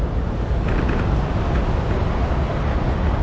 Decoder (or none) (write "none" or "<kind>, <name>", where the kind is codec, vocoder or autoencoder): none